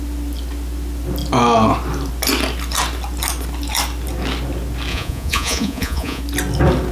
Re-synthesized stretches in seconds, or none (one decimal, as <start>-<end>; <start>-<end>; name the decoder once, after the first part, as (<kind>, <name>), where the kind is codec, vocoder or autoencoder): 4.9-6.2 (vocoder, Vocos)